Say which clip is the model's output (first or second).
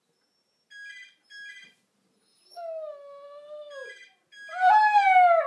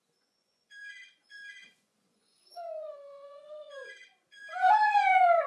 second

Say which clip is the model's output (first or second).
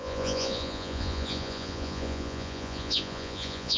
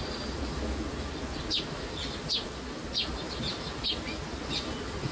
first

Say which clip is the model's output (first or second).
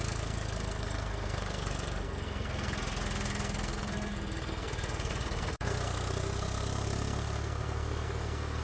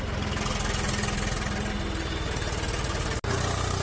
first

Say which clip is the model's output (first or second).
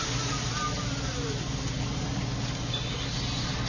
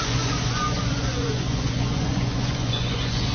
second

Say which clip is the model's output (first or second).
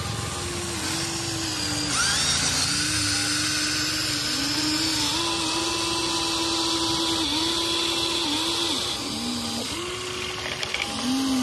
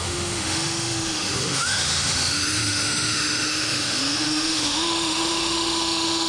second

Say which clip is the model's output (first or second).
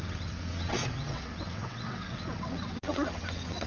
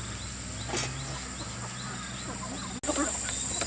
first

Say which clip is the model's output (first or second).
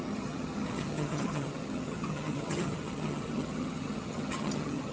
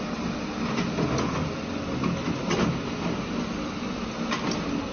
first